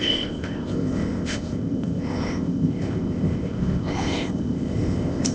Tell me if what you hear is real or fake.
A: fake